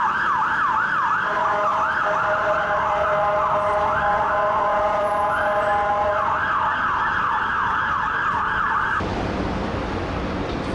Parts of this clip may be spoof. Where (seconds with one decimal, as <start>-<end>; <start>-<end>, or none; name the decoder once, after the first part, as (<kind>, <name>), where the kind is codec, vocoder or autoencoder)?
4.7-5.3 (vocoder, Vocos)

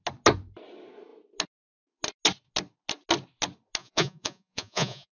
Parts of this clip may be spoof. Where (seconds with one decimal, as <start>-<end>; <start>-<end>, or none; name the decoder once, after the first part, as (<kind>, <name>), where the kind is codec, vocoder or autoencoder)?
3.8-5.1 (vocoder, Vocos)